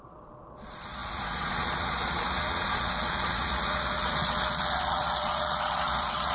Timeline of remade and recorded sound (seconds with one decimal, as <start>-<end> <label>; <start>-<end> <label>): 0.0-6.3 remade